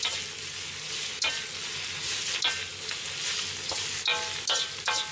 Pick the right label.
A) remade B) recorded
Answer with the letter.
B